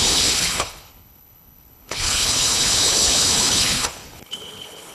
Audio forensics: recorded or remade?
remade